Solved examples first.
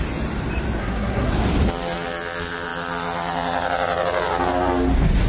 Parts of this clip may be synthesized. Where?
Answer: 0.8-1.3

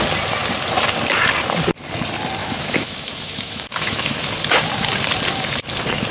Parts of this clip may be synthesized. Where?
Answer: 2.4-4.3

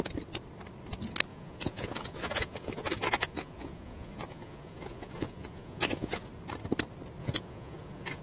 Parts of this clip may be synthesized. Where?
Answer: 1.3-6.2; 7.2-8.2

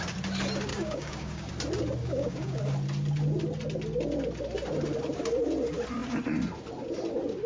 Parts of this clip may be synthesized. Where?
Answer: 0.7-1.5; 2.0-2.6

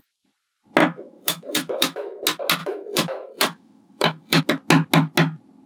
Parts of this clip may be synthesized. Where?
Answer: 0.8-2.2; 2.6-4.4

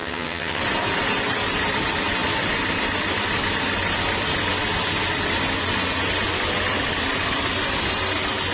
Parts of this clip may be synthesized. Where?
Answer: 0.0-0.6

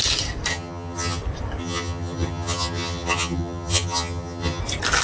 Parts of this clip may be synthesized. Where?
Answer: 0.5-1.2; 1.6-4.6

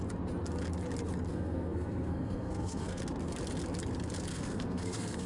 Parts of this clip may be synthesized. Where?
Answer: 1.3-3.0; 4.3-5.3